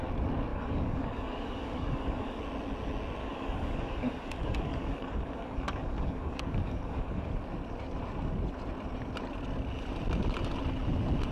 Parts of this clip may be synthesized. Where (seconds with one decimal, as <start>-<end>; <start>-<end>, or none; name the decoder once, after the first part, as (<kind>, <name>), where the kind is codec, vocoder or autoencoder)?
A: 0.5-2.4 (codec, DAC); 3.2-7.3